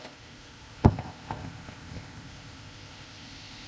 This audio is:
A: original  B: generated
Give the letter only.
B